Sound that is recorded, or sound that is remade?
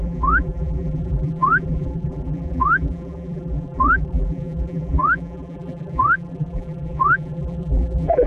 remade